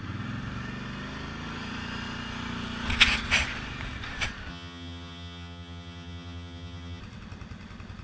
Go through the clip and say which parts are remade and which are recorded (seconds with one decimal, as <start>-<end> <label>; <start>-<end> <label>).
0.0-4.5 recorded; 4.5-7.0 remade; 7.0-8.0 recorded